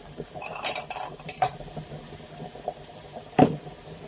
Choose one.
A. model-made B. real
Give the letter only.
A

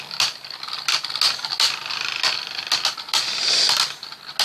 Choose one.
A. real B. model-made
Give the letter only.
A